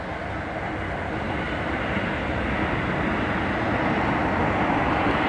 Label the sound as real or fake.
real